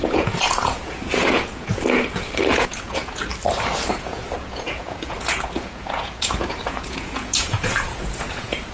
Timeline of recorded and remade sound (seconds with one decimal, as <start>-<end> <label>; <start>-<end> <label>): 0.0-1.7 remade; 1.7-2.5 recorded; 2.5-3.3 remade; 3.3-3.9 recorded; 3.9-8.7 remade